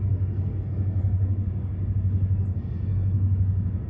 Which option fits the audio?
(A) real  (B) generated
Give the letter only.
B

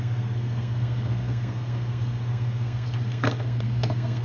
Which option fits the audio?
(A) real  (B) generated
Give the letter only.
B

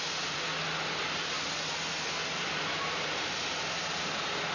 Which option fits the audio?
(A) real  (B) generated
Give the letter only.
A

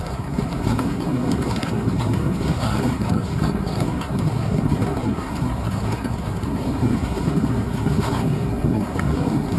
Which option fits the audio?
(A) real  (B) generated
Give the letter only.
B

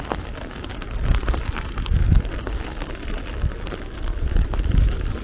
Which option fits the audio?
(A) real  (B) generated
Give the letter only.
A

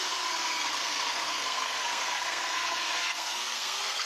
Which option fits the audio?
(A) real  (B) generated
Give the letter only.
B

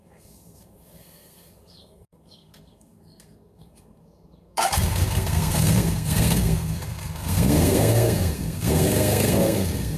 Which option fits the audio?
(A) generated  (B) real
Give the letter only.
A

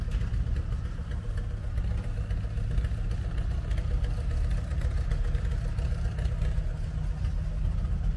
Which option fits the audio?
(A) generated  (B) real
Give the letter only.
B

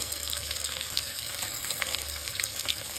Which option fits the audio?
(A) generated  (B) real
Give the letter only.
A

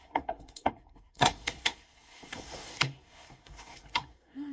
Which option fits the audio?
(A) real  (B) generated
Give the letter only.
B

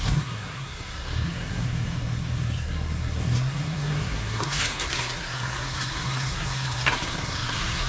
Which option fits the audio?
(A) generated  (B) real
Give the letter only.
A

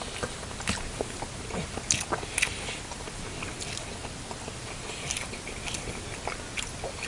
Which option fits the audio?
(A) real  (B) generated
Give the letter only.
A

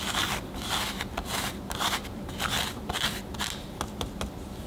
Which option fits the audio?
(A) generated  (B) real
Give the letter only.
B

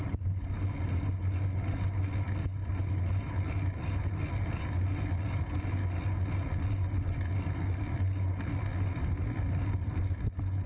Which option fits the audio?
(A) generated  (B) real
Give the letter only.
B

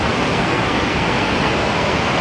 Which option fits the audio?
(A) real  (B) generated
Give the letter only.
B